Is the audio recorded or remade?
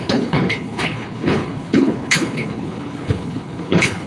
remade